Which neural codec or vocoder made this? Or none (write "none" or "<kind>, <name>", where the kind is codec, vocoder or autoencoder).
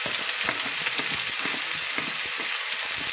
none